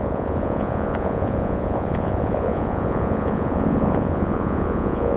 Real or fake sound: fake